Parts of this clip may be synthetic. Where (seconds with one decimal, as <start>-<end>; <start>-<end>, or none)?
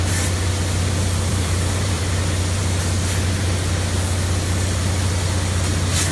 1.3-2.0